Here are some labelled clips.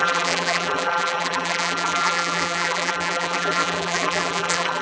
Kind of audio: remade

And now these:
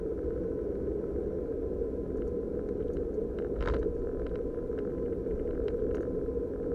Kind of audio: recorded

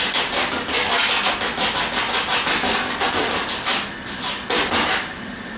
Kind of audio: recorded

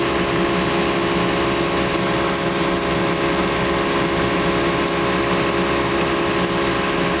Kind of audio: remade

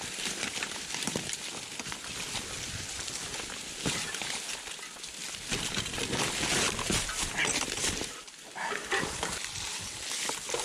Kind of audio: recorded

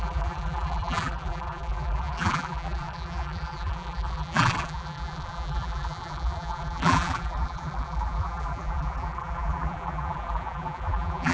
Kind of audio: remade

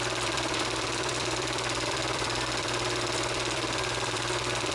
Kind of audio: remade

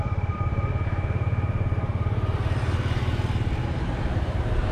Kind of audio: remade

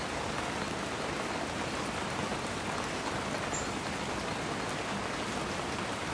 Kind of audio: recorded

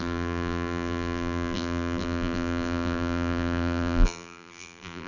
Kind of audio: remade